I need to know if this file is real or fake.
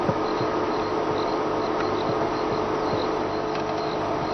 real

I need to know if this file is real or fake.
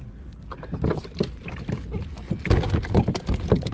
real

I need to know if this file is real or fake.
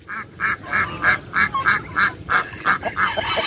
real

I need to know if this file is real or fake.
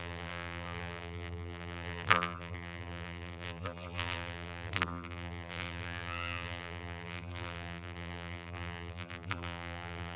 fake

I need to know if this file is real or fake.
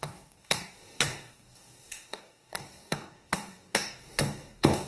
fake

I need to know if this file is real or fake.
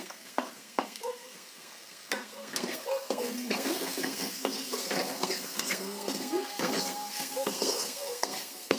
fake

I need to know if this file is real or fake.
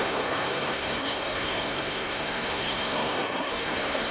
fake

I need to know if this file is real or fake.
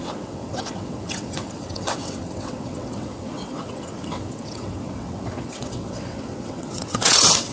fake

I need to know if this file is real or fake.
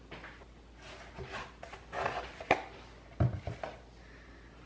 real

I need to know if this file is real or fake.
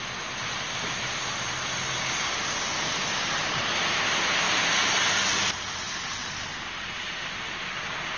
real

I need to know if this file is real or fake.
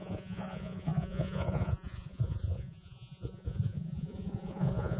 fake